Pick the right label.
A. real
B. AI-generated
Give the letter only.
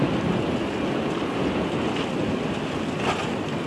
A